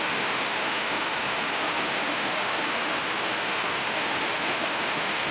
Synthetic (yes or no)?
yes